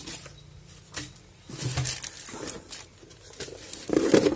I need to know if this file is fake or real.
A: real